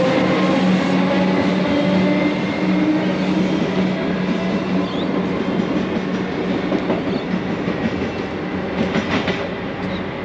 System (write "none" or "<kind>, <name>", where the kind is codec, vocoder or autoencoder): none